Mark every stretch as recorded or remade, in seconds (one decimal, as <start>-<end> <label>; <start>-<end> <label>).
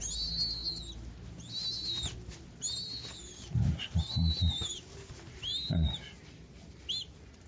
0.0-7.5 recorded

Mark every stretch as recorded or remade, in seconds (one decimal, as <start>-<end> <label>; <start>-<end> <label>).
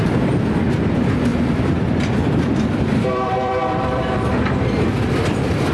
0.0-1.3 recorded; 1.3-4.7 remade; 4.7-5.7 recorded